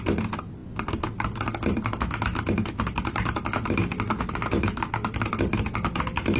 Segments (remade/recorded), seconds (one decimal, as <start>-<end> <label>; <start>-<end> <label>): 0.0-6.4 recorded

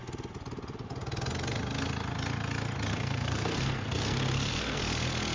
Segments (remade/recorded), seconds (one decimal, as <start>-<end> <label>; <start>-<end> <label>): 0.0-2.9 recorded; 2.9-4.8 remade; 4.8-5.3 recorded

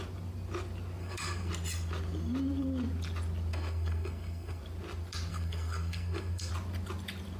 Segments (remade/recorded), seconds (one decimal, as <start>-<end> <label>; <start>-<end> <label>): 0.0-1.0 recorded; 1.0-1.5 remade; 1.5-3.5 recorded; 3.5-4.6 remade; 4.6-5.3 recorded; 5.3-6.5 remade; 6.5-7.4 recorded